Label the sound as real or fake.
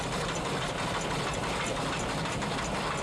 real